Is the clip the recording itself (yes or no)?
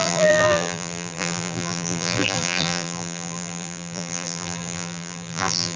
no